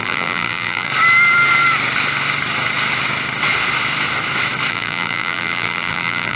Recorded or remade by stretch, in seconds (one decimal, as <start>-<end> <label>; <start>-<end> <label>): 0.0-0.9 remade; 0.9-4.7 recorded; 4.7-6.4 remade